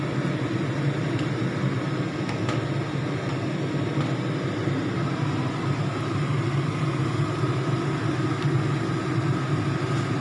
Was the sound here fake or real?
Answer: real